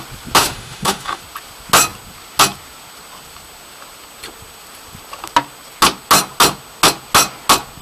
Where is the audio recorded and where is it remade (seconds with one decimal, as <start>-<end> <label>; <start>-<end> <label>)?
0.0-0.4 recorded; 0.4-1.2 remade; 1.2-7.8 recorded